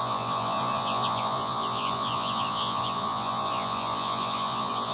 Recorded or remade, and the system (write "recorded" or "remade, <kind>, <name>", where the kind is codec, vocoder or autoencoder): remade, vocoder, Vocos